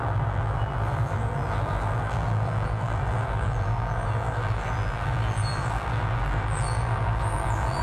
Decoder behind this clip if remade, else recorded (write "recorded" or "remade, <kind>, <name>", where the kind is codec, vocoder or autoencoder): remade, vocoder, BigVGAN v2